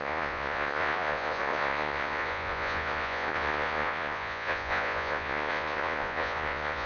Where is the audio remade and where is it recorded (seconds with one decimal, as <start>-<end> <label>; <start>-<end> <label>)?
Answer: 0.0-6.9 remade